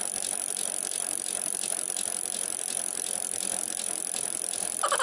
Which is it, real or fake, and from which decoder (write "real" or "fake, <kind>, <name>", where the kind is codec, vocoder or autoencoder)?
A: real